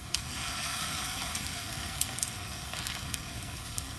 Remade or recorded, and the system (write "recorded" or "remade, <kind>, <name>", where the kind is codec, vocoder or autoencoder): remade, codec, SNAC